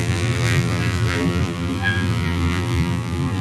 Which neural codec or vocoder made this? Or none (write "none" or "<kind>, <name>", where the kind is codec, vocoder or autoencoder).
vocoder, BigVGAN v2